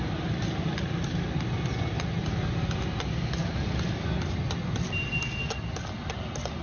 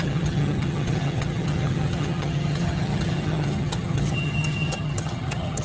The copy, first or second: second